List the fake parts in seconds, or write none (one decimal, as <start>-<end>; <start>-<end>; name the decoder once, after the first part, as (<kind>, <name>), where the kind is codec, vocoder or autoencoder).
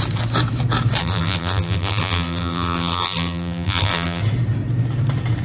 1.0-4.2 (vocoder, BigVGAN v2)